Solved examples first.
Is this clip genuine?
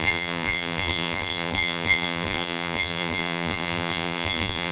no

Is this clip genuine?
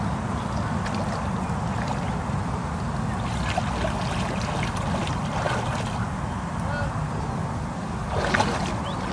yes